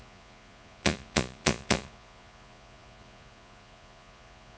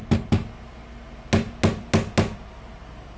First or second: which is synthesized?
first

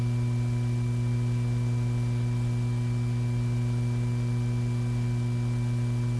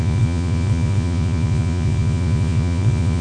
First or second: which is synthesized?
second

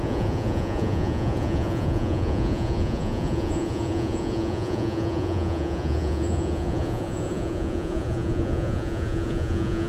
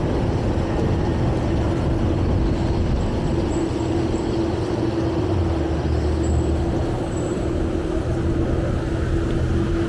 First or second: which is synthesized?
first